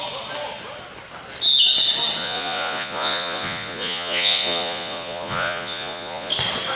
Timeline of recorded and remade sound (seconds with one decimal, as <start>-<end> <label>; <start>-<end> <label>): 0.0-2.2 recorded; 2.2-6.3 remade; 6.3-6.8 recorded